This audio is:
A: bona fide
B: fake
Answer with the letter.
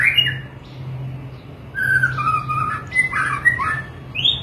A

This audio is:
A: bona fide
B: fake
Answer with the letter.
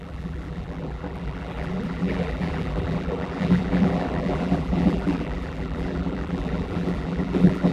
B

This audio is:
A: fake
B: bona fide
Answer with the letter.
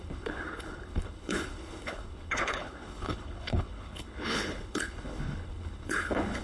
A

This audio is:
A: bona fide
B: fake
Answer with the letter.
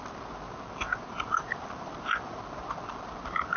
A